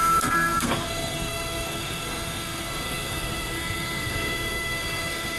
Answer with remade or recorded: remade